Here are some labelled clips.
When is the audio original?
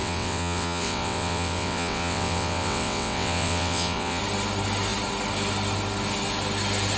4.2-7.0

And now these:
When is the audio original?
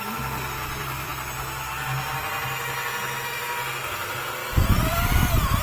1.1-3.9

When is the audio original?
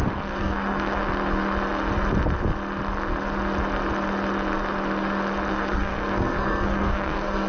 1.0-5.5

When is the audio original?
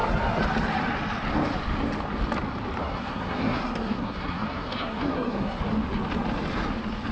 0.0-2.8; 5.6-7.1